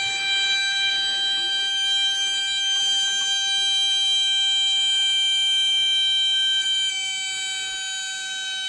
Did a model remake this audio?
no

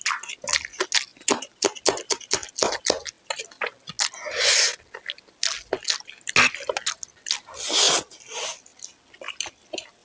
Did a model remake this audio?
no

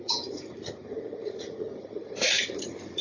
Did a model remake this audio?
yes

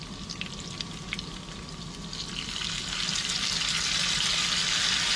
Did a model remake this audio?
no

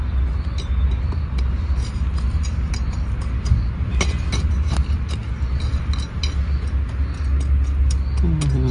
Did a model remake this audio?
no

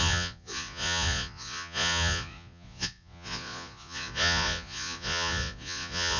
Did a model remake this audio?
yes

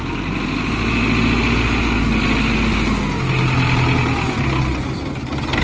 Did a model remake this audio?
no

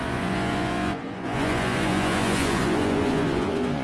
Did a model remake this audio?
yes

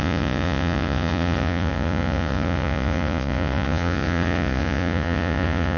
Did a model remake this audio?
yes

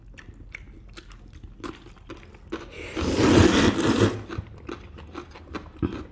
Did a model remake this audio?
no